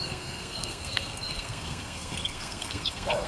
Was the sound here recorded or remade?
remade